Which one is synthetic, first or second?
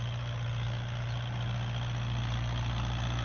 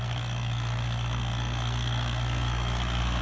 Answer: second